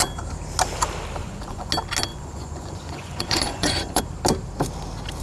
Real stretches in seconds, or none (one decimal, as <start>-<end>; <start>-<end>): 0.0-1.2; 1.7-2.1; 4.0-5.2